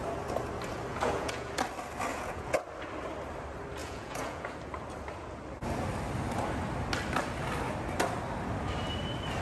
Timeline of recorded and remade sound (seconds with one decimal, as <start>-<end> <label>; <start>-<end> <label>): 0.0-0.9 recorded; 0.9-1.5 remade; 1.5-2.1 recorded; 2.1-2.6 remade; 2.6-3.8 recorded; 3.8-4.5 remade; 4.5-9.4 recorded